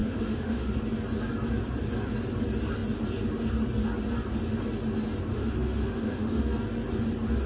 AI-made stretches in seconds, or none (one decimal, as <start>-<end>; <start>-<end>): 0.0-0.7; 5.3-6.4